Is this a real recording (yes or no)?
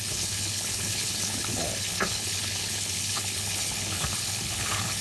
no